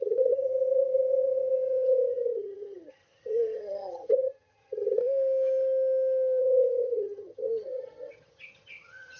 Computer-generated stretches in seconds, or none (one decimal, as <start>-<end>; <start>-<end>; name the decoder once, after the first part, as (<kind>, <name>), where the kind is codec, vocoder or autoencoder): 0.0-5.0 (vocoder, HiFi-GAN); 6.4-9.2